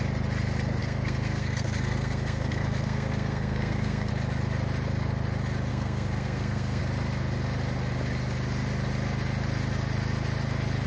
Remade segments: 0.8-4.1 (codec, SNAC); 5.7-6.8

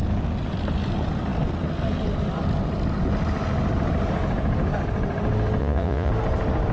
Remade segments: 5.6-6.1 (vocoder, Vocos)

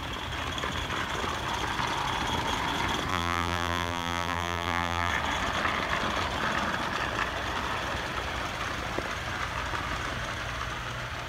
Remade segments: 3.1-5.1 (vocoder, BigVGAN v2)

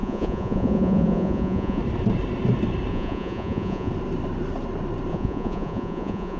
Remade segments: 0.0-1.8 (vocoder, Vocos); 2.9-3.9; 5.1-6.4

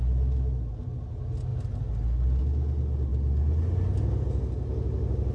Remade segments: none

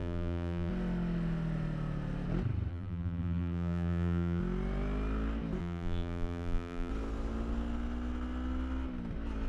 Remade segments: 0.0-0.7 (vocoder, BigVGAN v2); 2.7-4.4; 5.6-6.9

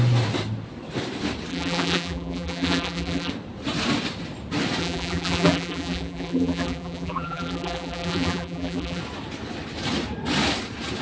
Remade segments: 1.5-3.3 (vocoder, BigVGAN v2); 4.8-9.0

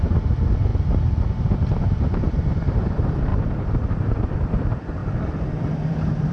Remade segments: 0.0-0.7 (vocoder, BigVGAN v2); 2.2-5.0; 5.6-6.3